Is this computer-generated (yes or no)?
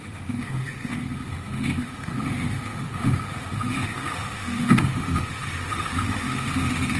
yes